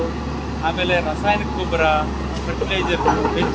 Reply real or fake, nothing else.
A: real